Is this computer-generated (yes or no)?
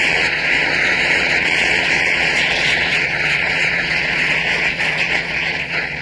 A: yes